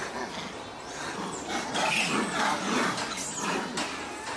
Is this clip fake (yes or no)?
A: no